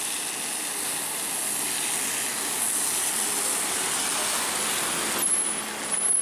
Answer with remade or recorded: recorded